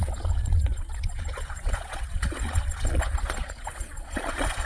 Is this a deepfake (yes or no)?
yes